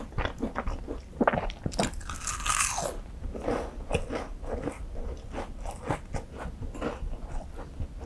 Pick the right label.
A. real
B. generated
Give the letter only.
A